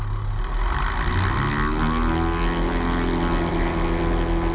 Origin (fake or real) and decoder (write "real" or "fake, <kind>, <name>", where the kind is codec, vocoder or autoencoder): real